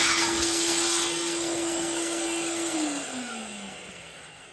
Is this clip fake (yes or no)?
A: yes